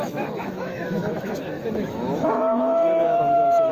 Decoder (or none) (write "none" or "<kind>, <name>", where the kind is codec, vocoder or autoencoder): autoencoder, DAC-VAE